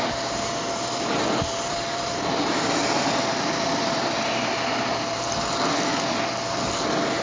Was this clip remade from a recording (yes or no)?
yes